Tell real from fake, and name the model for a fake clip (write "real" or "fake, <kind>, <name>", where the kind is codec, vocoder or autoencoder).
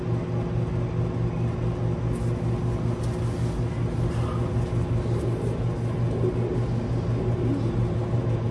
real